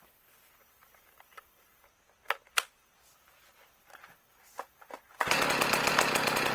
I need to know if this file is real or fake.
real